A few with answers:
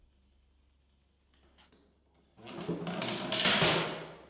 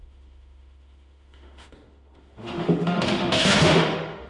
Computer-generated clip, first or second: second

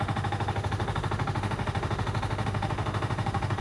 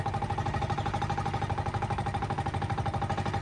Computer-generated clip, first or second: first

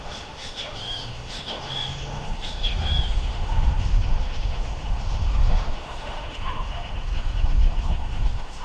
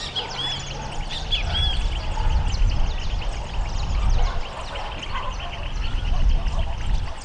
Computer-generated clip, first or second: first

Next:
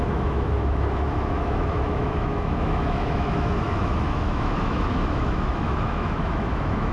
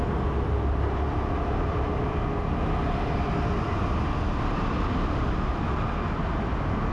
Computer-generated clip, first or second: first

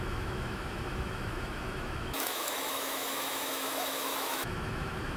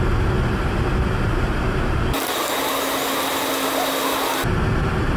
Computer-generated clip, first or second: first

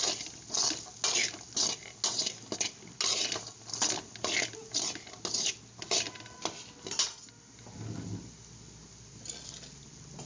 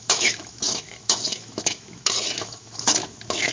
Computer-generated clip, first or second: second